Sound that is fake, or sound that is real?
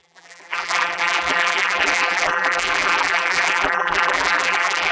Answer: fake